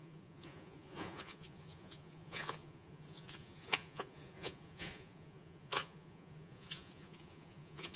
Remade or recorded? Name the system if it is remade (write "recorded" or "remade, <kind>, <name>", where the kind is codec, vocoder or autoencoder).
remade, vocoder, Vocos